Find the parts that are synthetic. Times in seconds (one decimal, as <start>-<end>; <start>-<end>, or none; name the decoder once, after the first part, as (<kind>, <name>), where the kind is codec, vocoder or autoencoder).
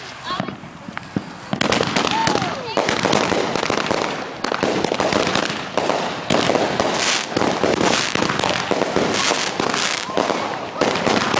none